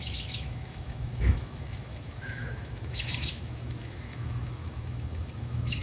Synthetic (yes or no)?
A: yes